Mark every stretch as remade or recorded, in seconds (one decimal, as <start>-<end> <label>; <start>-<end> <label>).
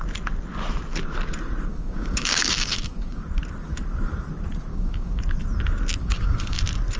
0.0-1.7 recorded; 1.7-3.2 remade; 3.2-4.7 recorded; 4.7-5.2 remade; 5.2-6.0 recorded; 6.0-6.6 remade; 6.6-7.0 recorded